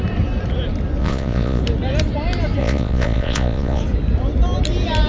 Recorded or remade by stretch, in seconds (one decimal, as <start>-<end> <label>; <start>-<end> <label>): 0.0-1.0 recorded; 1.0-1.6 remade; 1.6-2.6 recorded; 2.6-3.8 remade; 3.8-5.1 recorded

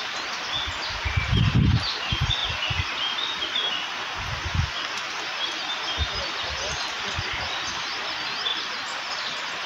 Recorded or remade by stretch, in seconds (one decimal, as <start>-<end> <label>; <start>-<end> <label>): 0.0-2.4 remade; 2.4-7.1 recorded; 7.1-8.5 remade; 8.5-9.7 recorded

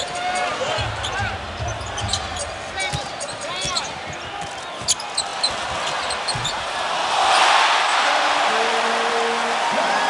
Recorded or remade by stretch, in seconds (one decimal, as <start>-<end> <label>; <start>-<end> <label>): 0.0-10.1 recorded

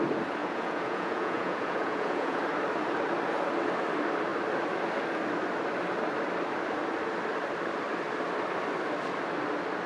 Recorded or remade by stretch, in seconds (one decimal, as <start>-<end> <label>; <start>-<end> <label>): 0.0-0.4 recorded; 0.4-2.4 remade; 2.4-9.9 recorded

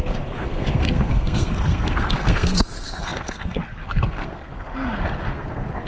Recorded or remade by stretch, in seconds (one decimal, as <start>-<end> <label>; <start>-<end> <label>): 0.0-5.9 remade